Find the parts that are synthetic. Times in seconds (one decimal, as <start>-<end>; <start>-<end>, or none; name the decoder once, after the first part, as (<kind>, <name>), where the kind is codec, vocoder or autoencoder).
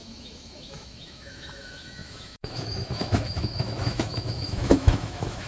0.0-5.5 (autoencoder, DAC-VAE)